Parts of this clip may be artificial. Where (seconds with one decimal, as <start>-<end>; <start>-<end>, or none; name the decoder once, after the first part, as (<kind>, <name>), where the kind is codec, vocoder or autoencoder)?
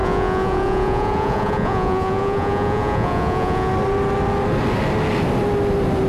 0.0-3.7 (vocoder, Vocos)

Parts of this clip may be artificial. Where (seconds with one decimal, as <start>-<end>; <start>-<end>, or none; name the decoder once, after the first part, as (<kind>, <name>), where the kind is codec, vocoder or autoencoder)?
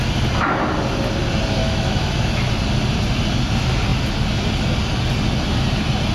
1.6-2.5 (autoencoder, DAC-VAE)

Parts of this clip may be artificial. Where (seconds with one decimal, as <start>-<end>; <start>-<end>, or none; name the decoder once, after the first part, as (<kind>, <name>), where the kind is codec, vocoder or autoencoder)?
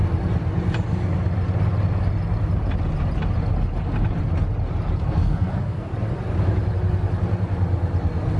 5.0-5.9 (codec, SNAC)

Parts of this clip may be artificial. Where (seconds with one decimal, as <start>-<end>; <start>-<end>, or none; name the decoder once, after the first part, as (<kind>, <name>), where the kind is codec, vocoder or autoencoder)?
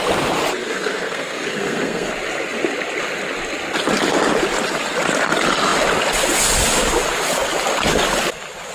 0.6-2.1 (codec, SNAC)